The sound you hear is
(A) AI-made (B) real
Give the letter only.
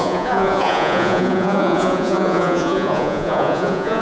A